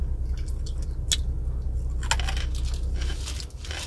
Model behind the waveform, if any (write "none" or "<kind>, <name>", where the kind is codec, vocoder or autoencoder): none